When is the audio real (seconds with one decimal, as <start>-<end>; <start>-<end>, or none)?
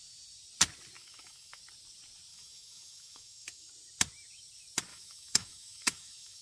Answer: 0.0-1.0; 1.6-2.3; 3.7-4.9